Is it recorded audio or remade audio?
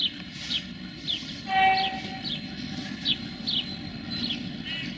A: recorded